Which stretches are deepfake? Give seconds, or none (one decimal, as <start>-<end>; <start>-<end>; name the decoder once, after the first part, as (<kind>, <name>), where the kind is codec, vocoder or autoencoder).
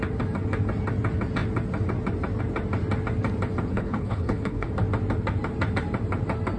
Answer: 3.7-4.7 (codec, HILCodec)